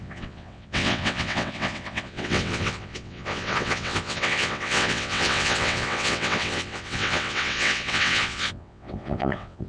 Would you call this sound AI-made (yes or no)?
yes